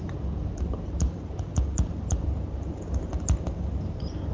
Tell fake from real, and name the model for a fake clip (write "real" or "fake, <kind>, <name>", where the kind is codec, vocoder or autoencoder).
real